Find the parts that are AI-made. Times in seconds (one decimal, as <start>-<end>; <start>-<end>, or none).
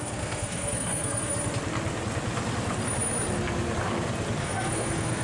0.0-1.3; 4.4-5.2